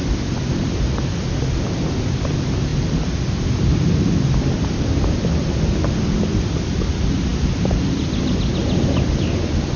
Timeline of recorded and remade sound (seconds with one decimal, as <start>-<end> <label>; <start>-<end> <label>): 0.0-9.8 recorded